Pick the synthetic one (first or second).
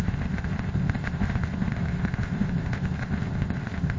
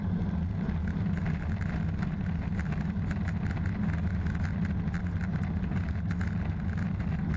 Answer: first